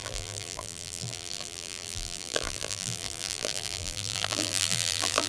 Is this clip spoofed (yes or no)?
yes